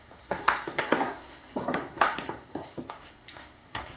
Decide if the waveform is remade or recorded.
remade